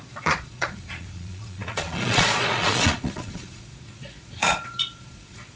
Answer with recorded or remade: remade